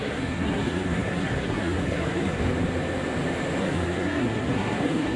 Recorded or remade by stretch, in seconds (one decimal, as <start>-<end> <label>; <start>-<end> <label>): 0.0-2.4 remade; 2.4-3.6 recorded; 3.6-5.2 remade